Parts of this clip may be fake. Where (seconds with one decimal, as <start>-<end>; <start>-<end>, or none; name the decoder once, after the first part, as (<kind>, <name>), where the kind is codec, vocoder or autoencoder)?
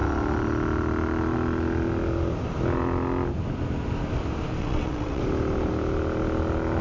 4.6-5.2 (vocoder, WaveNeXt)